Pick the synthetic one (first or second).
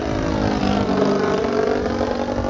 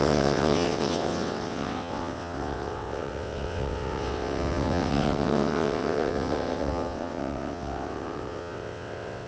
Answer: second